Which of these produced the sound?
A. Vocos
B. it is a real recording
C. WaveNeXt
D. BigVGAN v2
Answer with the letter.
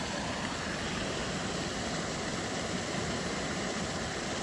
B